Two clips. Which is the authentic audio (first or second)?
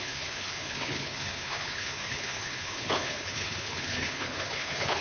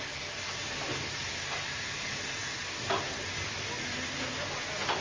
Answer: second